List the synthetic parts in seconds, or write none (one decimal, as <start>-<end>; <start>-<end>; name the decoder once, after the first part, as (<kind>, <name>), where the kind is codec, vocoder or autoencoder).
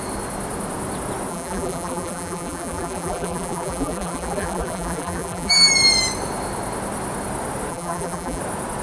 1.3-5.7 (vocoder, BigVGAN v2); 7.7-8.4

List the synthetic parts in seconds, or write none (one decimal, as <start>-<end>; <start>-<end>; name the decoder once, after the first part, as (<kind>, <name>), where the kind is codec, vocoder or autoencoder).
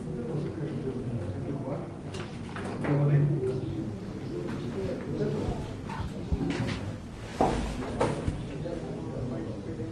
6.2-6.8 (codec, SNAC)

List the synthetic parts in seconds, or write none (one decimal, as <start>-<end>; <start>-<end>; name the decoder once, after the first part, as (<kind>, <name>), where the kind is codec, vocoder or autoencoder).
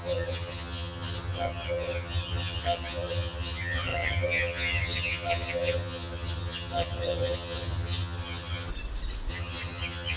0.0-8.7 (vocoder, HiFi-GAN); 9.3-10.2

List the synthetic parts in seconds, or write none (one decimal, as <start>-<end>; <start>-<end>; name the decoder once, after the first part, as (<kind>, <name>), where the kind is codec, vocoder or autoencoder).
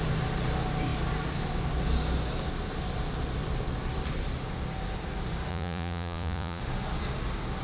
5.5-6.6 (vocoder, Vocos)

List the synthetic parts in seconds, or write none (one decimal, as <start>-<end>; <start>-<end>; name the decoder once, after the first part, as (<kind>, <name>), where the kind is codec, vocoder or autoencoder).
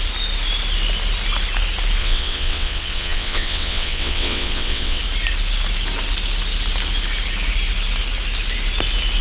2.0-5.0 (vocoder, WaveNeXt)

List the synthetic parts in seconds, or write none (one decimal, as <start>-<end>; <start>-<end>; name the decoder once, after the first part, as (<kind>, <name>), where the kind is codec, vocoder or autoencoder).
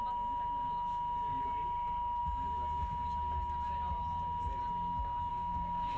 5.3-6.0 (codec, SNAC)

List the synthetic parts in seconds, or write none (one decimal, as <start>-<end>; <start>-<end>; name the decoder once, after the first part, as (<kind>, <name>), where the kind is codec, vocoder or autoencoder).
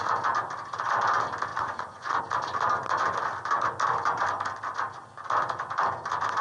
1.5-2.2 (vocoder, Vocos)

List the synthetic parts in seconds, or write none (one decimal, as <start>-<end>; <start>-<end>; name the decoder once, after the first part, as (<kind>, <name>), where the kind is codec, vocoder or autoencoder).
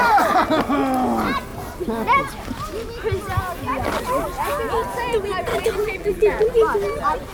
5.5-6.5 (vocoder, BigVGAN v2)